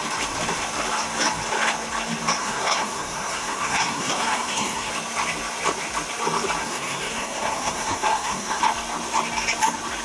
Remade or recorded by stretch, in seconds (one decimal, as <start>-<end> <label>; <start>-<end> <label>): 0.0-2.4 recorded; 2.4-4.9 remade; 4.9-6.6 recorded; 6.6-8.6 remade; 8.6-10.0 recorded